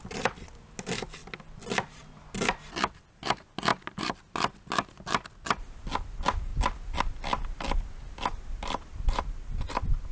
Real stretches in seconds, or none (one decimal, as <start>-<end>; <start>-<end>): 0.0-10.1